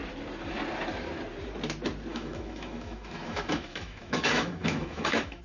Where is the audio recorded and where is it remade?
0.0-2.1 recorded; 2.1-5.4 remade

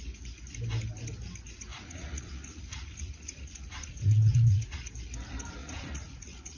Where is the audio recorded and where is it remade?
0.0-1.7 recorded; 1.7-4.8 remade; 4.8-5.6 recorded; 5.6-6.6 remade

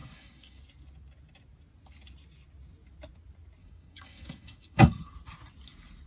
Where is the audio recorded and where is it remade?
0.0-0.6 remade; 0.6-3.6 recorded; 3.6-5.1 remade; 5.1-6.1 recorded

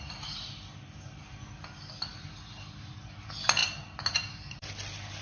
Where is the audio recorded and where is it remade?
0.0-5.2 remade

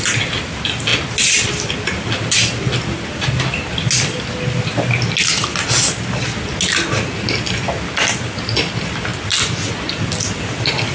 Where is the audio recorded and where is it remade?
0.0-10.9 recorded

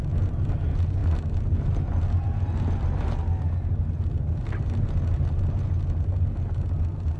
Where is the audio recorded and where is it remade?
0.0-7.2 recorded

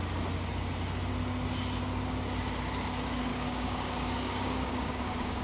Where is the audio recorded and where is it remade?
0.0-3.3 recorded; 3.3-5.4 remade